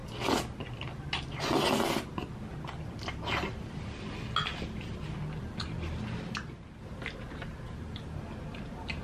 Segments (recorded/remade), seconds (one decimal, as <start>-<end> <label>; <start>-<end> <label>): 0.0-9.0 recorded